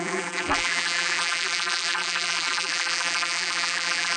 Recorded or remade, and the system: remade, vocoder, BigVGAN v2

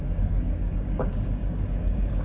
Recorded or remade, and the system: remade, codec, DAC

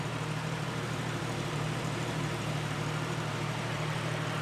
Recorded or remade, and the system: remade, vocoder, BigVGAN v2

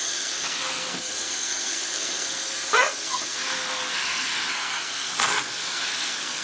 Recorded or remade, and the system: remade, codec, SNAC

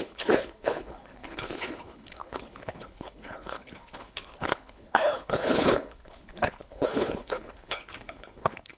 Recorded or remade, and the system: remade, codec, HILCodec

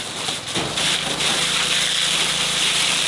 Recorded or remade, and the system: recorded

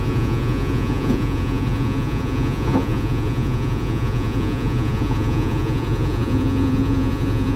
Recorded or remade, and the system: remade, vocoder, Vocos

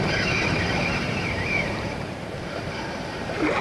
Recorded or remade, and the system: remade, vocoder, BigVGAN v2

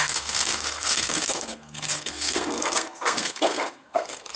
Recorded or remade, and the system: remade, codec, SNAC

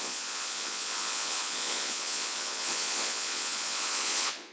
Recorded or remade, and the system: remade, vocoder, Vocos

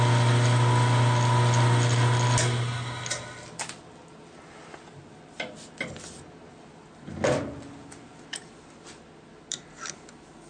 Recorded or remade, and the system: recorded